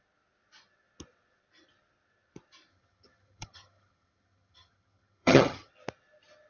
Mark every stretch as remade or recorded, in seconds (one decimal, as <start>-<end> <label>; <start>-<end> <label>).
0.0-2.7 recorded; 2.7-5.7 remade; 5.7-6.5 recorded